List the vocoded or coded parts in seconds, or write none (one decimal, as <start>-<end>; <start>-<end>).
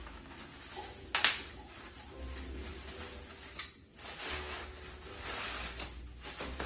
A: none